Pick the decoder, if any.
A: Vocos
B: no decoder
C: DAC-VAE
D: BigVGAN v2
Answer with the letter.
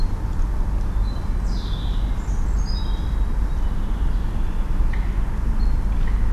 B